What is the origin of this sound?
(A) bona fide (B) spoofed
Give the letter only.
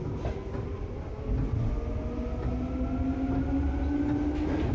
A